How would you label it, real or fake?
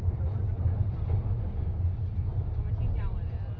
real